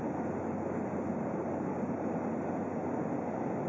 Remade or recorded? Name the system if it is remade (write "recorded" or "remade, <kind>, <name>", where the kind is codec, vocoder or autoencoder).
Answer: recorded